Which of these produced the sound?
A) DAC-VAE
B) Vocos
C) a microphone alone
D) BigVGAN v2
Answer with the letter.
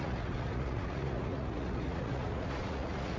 B